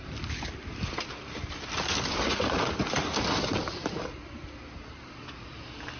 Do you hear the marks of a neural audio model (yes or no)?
no